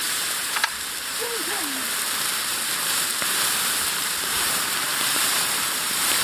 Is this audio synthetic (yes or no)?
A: yes